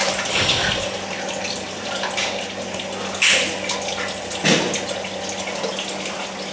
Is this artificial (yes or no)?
no